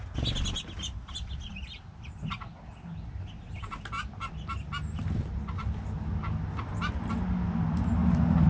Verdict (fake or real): real